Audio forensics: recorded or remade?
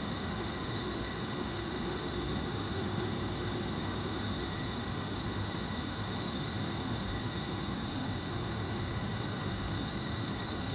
remade